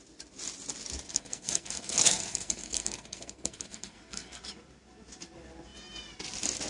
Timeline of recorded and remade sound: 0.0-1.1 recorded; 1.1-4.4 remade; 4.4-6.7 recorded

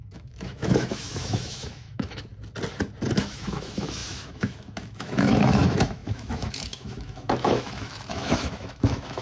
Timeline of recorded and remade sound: 0.0-2.3 remade; 2.3-3.2 recorded; 3.2-9.2 remade

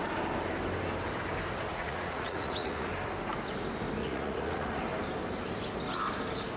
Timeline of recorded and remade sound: 0.0-1.7 recorded; 1.7-2.9 remade; 2.9-4.0 recorded; 4.0-4.8 remade; 4.8-6.6 recorded

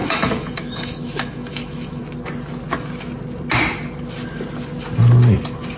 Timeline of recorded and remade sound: 0.0-2.0 remade; 2.0-5.8 recorded

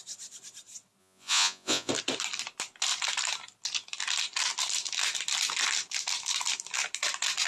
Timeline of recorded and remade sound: 0.0-1.0 recorded; 1.0-1.9 remade; 1.9-7.5 recorded

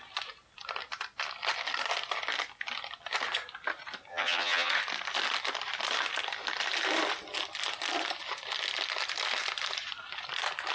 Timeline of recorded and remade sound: 0.0-4.1 recorded; 4.1-4.7 remade; 4.7-10.7 recorded